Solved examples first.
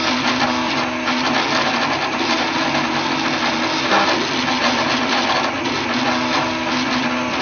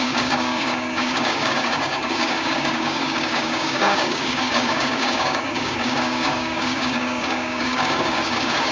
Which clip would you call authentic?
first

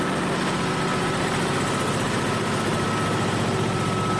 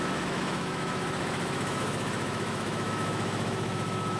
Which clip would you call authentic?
first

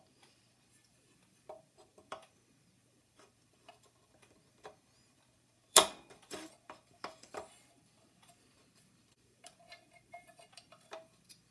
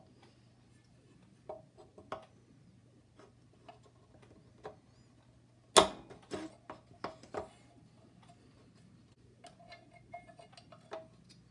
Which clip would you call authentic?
second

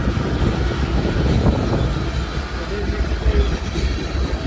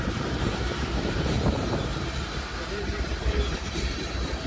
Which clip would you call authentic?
first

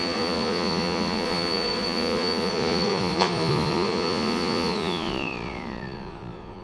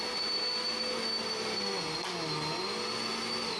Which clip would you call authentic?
second